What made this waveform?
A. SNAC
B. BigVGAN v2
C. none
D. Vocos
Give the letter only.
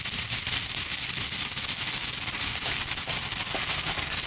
C